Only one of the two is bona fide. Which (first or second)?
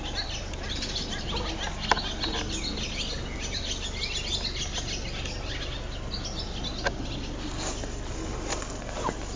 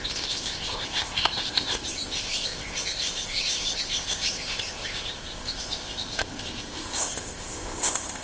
first